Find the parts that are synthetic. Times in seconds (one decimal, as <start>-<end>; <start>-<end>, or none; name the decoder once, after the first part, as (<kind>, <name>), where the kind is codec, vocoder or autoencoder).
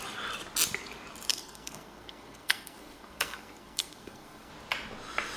1.3-4.5 (codec, SNAC)